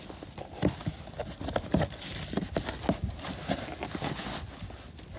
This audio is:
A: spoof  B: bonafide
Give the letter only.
B